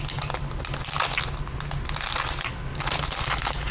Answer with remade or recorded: recorded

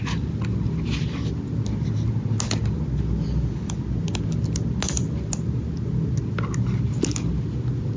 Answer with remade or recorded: recorded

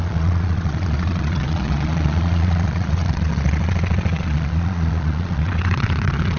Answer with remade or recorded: remade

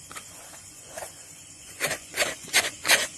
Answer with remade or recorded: remade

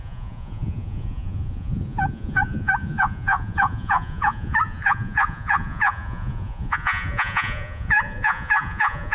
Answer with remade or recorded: remade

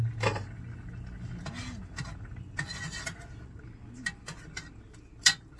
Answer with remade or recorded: recorded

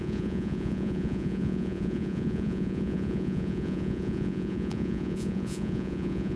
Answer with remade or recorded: remade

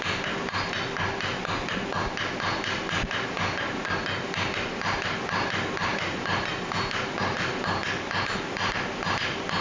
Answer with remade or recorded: recorded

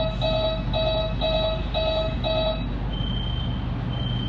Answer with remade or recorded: recorded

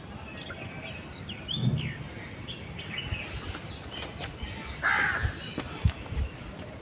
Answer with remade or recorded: recorded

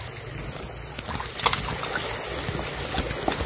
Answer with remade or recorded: recorded